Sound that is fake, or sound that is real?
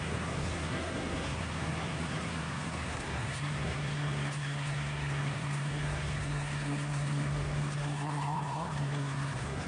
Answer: fake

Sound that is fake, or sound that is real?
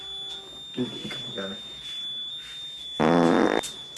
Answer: real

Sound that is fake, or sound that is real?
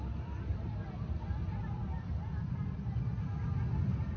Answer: real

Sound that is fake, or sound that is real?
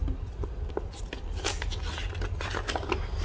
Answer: real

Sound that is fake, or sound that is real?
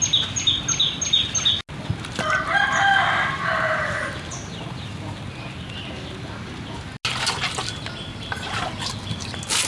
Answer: real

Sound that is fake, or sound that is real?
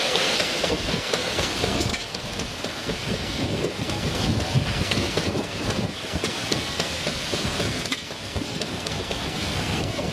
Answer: fake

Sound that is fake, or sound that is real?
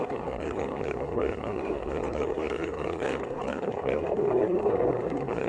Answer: fake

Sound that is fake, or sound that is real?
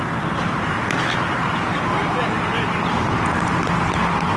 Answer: real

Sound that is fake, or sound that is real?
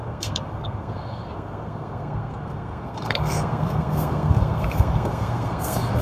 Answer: fake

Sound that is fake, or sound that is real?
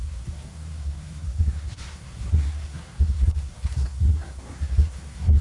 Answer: fake